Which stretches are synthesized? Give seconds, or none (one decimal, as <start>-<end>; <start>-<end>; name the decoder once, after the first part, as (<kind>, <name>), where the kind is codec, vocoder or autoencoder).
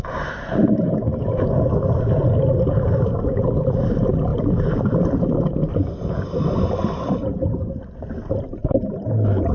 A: 4.3-5.9 (vocoder, BigVGAN v2); 8.6-9.1